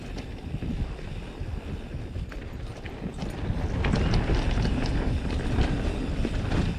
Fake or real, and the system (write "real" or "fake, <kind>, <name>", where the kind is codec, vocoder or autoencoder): real